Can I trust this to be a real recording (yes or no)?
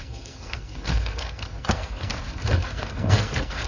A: no